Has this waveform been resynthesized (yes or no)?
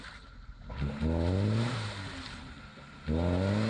no